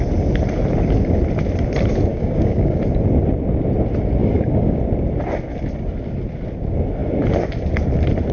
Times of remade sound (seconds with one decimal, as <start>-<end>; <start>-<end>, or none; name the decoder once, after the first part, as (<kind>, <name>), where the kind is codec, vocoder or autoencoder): 2.1-2.8 (codec, DAC); 4.2-4.8